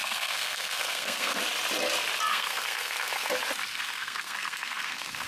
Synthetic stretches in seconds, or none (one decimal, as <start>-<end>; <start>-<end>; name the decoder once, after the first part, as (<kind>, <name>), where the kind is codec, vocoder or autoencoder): 0.0-1.4 (codec, SNAC); 2.3-3.3; 3.7-5.3